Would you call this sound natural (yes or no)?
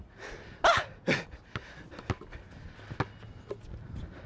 yes